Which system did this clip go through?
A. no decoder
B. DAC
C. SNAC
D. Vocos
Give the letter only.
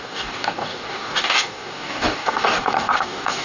B